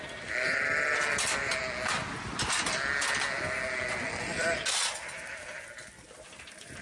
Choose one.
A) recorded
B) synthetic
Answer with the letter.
A